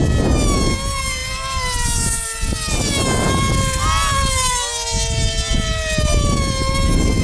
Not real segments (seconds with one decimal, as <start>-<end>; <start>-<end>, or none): none